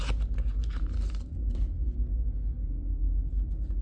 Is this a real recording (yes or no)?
yes